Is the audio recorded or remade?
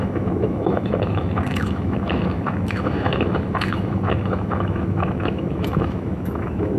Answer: remade